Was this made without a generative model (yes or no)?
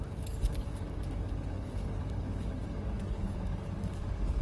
no